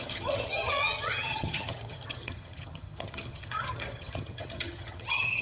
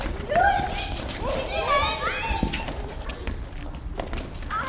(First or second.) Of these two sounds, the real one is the second